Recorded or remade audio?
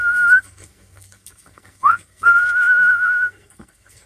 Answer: remade